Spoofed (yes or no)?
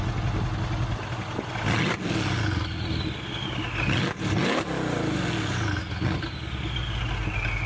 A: no